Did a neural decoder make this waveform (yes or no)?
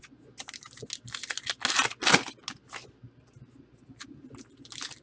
no